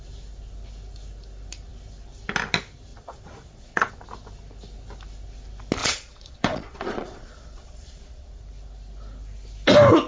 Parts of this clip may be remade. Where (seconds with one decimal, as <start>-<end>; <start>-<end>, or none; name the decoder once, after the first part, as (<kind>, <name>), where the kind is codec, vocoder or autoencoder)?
2.9-3.9 (vocoder, Vocos); 5.8-8.4